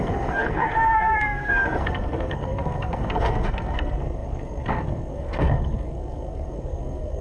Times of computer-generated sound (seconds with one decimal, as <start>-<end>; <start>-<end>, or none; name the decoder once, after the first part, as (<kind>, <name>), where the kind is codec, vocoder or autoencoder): 0.0-7.2 (codec, SNAC)